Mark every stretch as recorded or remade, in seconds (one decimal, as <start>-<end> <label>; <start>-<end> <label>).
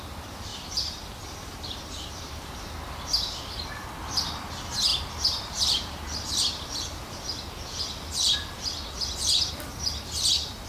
0.0-0.5 recorded; 0.5-2.2 remade; 2.2-4.9 recorded; 4.9-9.5 remade; 9.5-10.7 recorded